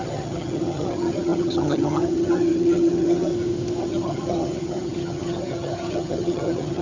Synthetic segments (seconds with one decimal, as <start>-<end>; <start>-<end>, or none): 0.0-3.3; 3.8-6.8